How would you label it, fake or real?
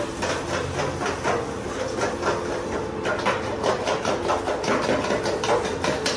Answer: real